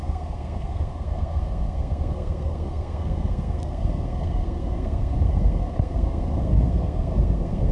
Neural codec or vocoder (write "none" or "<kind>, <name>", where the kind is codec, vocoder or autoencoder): codec, SNAC